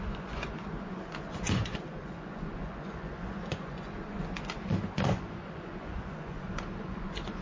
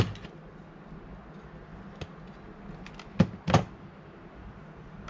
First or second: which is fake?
first